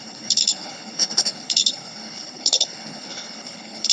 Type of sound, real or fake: fake